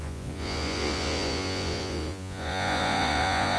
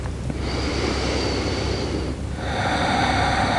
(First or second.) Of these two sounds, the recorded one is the second